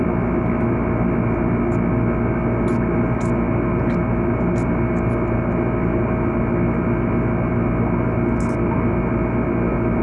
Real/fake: real